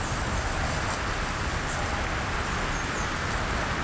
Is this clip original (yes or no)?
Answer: yes